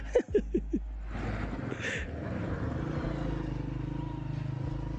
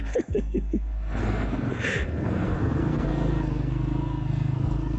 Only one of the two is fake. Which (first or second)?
second